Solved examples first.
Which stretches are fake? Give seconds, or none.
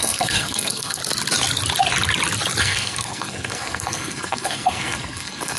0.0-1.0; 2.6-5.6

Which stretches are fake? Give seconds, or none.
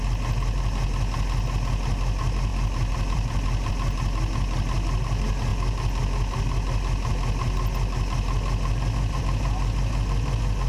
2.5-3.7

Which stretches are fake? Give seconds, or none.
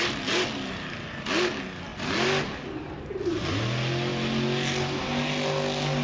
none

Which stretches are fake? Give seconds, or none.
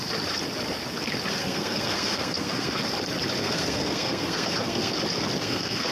1.3-2.8; 3.4-4.9; 5.4-5.9